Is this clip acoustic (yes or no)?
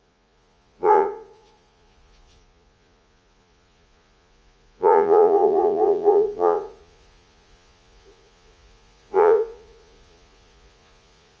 no